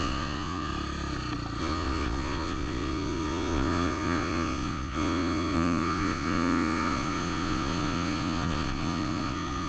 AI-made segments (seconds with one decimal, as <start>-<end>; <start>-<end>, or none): 0.0-0.7; 1.6-9.7